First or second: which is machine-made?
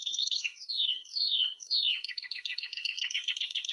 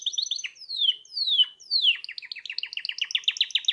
first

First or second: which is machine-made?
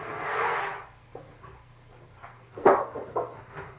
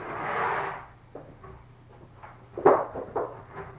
first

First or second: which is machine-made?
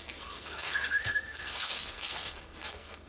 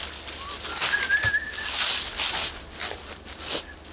first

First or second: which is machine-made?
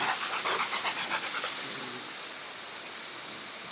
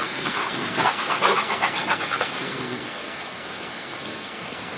second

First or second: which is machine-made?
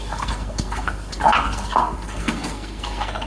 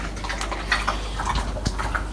first